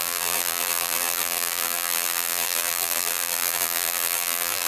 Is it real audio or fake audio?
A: fake